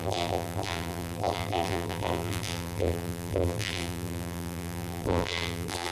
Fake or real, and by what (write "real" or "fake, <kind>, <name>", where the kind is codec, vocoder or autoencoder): fake, vocoder, BigVGAN v2